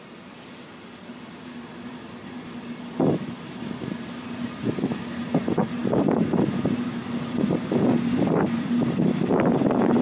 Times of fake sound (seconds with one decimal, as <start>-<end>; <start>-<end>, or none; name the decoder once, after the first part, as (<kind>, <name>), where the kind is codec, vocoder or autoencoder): none